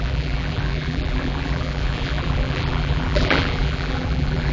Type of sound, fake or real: fake